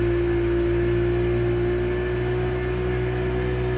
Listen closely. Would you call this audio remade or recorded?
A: recorded